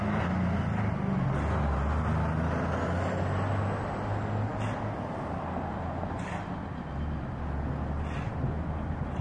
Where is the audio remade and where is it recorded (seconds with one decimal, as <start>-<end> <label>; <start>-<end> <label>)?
0.0-9.2 recorded